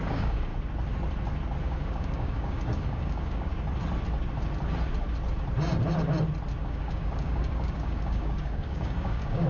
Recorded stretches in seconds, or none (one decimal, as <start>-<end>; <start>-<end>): 0.5-1.6; 3.5-6.6